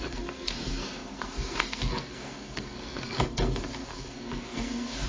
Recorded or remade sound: remade